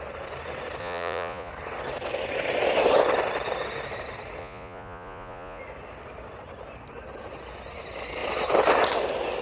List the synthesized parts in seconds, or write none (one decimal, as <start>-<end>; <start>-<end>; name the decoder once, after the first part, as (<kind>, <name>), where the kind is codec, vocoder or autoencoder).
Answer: 0.8-1.5 (vocoder, Vocos); 4.4-5.6